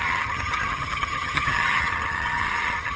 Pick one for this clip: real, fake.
fake